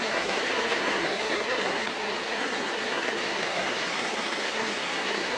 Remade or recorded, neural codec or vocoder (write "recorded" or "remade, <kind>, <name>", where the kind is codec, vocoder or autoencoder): remade, codec, SNAC